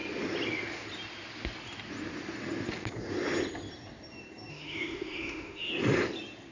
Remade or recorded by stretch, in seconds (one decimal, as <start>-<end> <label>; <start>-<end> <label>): 0.0-4.5 recorded; 4.5-5.7 remade; 5.7-6.5 recorded